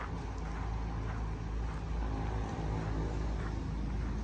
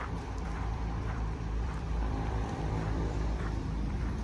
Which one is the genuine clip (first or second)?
first